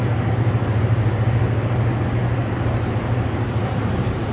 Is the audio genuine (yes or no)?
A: yes